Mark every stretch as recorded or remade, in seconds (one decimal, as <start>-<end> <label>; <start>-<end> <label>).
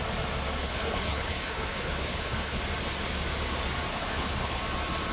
0.0-0.6 recorded; 0.6-2.6 remade; 2.6-3.9 recorded; 3.9-4.6 remade; 4.6-5.1 recorded